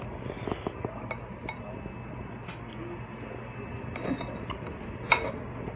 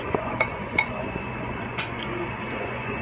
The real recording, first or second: first